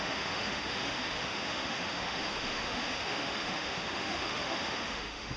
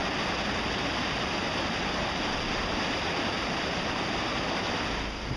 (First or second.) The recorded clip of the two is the second